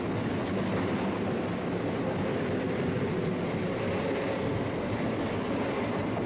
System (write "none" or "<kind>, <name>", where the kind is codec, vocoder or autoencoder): none